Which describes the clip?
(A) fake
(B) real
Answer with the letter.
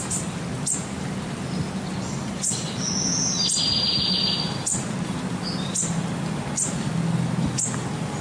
B